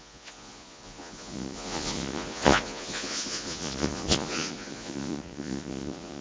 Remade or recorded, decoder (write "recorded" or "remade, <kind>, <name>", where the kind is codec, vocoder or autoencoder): remade, vocoder, Vocos